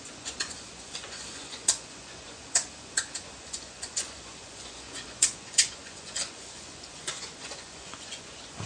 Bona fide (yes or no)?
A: no